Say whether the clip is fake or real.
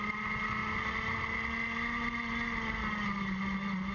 real